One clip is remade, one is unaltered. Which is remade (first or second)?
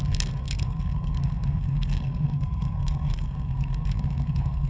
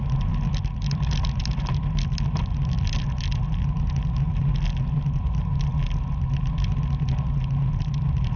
first